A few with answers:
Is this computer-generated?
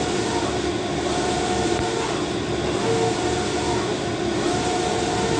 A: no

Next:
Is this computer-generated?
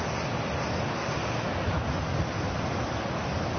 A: no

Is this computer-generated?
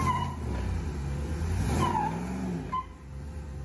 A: no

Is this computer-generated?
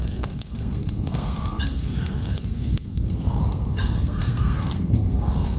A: yes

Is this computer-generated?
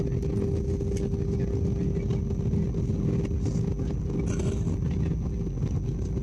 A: no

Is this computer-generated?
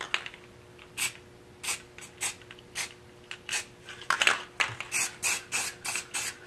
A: no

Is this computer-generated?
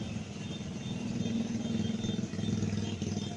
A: no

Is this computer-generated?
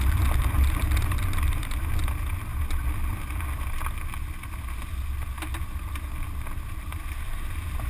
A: no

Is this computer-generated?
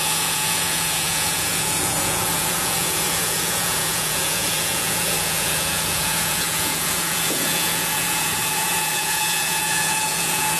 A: yes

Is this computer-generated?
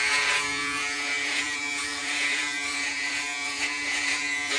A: yes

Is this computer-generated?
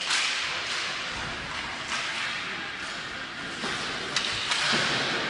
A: no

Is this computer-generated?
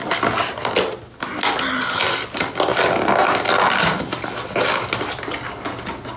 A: no